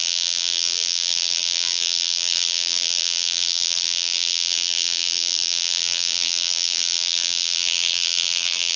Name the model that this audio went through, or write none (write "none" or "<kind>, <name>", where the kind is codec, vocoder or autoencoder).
vocoder, BigVGAN v2